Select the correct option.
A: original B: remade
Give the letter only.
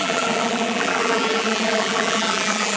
B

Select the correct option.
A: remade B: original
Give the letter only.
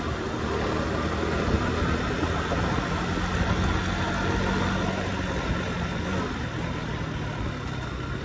B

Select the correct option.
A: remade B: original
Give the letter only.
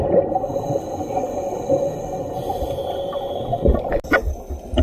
B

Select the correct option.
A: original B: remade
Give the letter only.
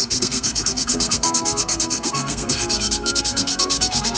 B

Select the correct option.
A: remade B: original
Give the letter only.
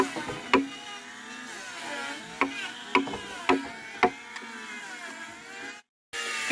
B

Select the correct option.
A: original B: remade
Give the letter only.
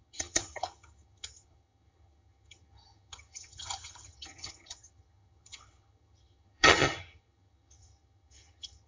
B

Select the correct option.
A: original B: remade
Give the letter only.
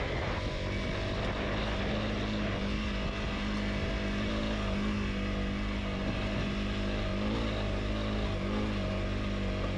A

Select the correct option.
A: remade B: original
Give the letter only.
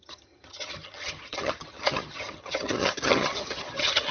A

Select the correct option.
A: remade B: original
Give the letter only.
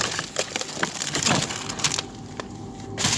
B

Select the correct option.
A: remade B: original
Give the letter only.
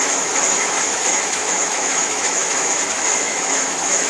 A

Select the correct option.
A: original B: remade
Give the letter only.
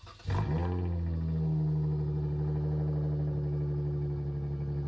A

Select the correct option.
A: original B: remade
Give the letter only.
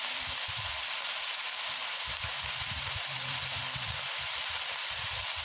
B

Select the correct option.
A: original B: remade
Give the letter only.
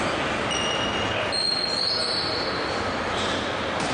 A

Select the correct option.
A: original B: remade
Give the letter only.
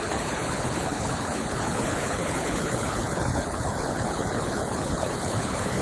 B